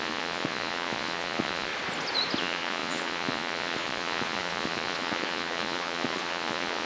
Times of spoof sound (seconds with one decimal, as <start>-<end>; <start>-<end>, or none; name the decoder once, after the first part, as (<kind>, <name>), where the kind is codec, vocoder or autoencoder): 0.0-1.7 (vocoder, Vocos); 2.4-6.9